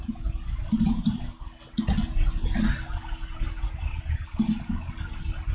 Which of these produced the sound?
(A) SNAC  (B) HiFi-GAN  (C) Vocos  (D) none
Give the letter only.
D